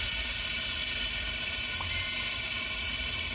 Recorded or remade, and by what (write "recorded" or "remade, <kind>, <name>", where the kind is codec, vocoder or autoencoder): recorded